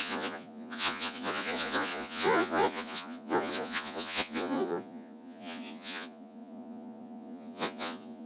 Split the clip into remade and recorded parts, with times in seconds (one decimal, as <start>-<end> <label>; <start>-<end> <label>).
0.0-8.3 remade